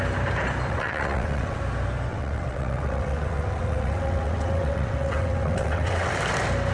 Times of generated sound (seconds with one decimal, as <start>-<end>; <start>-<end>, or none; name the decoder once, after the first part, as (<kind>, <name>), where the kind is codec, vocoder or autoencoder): 0.7-1.6 (vocoder, WaveNeXt); 2.1-6.1